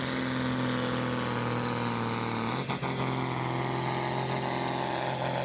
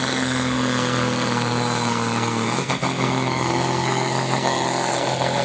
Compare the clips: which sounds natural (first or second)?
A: first